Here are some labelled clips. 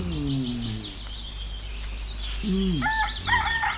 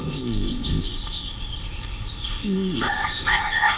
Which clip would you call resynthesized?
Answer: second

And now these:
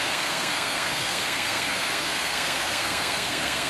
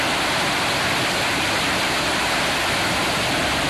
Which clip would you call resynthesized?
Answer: first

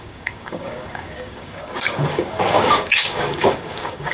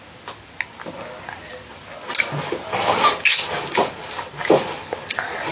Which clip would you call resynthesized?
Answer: first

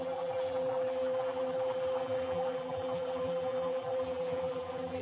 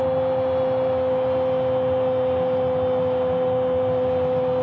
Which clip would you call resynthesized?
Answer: first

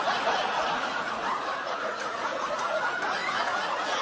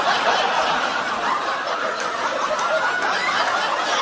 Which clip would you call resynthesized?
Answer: first